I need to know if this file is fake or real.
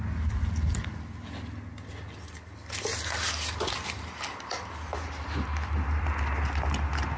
real